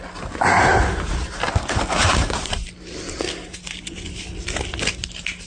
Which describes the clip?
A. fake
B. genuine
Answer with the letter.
B